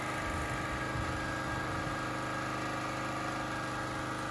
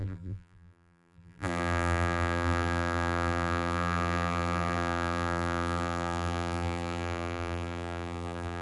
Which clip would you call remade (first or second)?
second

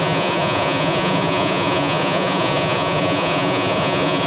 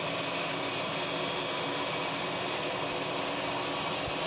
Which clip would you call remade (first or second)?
first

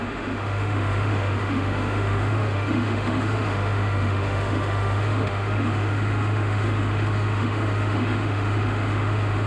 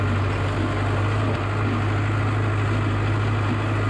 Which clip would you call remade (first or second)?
first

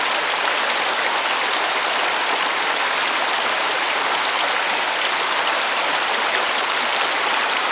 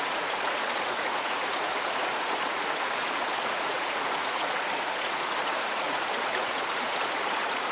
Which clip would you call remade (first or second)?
second